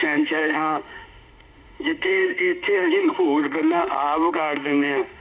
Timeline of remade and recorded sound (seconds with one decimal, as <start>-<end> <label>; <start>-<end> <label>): 0.0-3.8 remade; 3.8-4.3 recorded; 4.3-5.2 remade